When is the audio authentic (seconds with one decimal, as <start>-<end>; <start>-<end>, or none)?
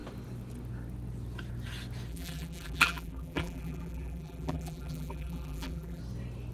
0.0-2.1; 6.0-6.5